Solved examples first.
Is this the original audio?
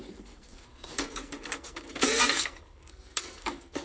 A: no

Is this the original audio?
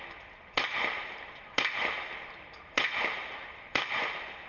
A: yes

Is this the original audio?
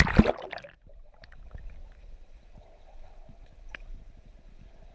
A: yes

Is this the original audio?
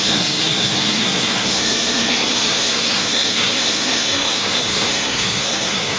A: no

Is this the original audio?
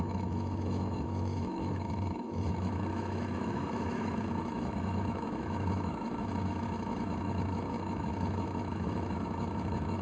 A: no